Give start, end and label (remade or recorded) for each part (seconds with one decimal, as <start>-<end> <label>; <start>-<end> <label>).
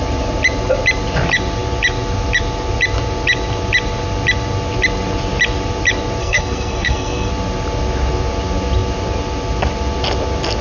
0.0-6.2 recorded; 6.2-7.3 remade; 7.3-10.6 recorded